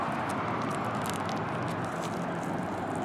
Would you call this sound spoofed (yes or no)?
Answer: no